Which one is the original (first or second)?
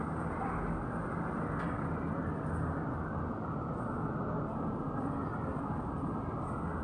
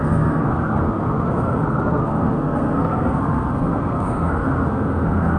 first